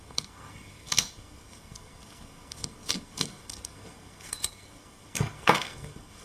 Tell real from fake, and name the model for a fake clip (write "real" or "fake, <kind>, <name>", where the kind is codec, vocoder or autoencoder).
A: fake, codec, SNAC